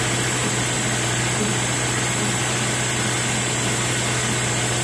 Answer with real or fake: real